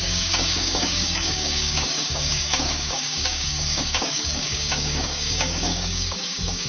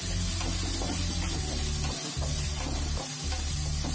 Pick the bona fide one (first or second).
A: second